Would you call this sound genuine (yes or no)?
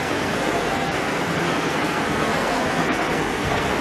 no